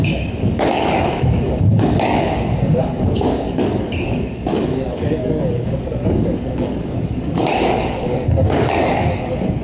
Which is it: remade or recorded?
remade